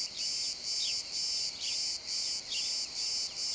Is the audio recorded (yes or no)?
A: yes